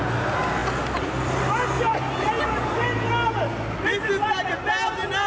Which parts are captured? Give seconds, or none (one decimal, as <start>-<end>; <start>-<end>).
0.0-5.3